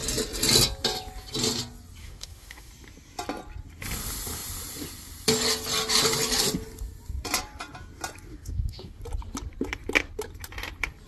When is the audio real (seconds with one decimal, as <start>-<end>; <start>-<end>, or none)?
0.0-2.0; 2.7-8.3; 9.0-11.1